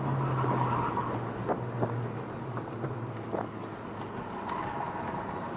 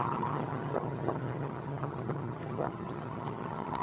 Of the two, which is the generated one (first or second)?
second